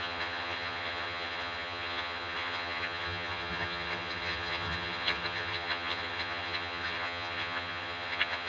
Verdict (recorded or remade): remade